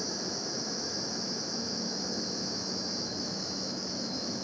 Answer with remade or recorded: remade